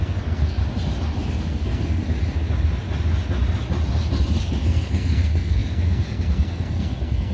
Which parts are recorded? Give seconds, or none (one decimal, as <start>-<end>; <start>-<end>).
0.6-1.3; 2.0-4.4